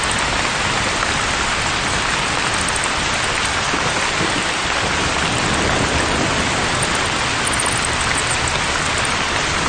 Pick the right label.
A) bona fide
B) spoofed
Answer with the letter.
A